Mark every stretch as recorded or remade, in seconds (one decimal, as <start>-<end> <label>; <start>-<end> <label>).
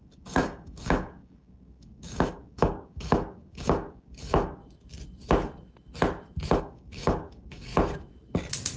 0.0-4.6 remade; 4.6-6.6 recorded; 6.6-7.7 remade; 7.7-8.8 recorded